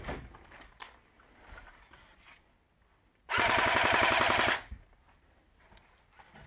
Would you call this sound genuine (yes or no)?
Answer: yes